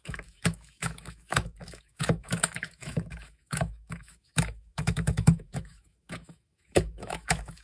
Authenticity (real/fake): fake